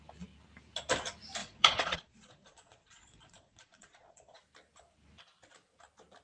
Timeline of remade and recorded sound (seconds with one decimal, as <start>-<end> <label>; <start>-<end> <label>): 0.0-1.4 recorded; 1.4-4.4 remade; 4.4-6.2 recorded